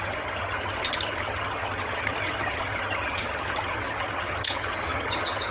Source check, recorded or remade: remade